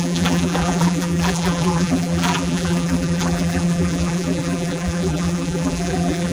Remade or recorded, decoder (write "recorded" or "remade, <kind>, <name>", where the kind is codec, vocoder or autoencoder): remade, vocoder, BigVGAN v2